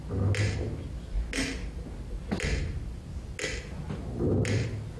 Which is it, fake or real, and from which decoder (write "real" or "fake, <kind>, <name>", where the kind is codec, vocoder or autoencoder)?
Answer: real